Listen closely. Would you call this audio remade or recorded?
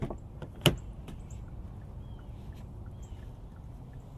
recorded